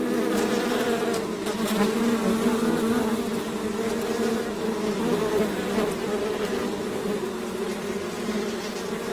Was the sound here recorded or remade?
recorded